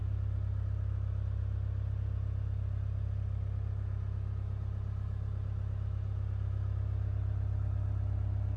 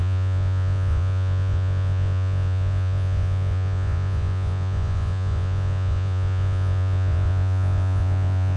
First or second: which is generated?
second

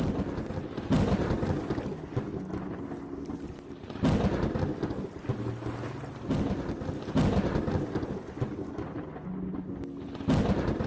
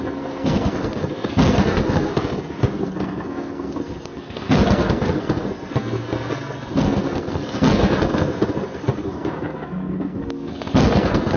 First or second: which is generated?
second